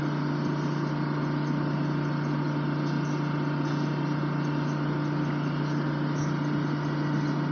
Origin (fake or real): real